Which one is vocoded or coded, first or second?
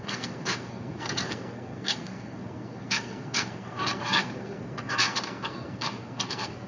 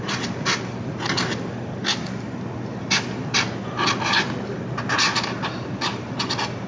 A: first